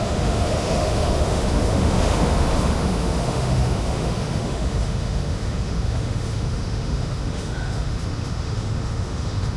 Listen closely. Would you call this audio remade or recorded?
remade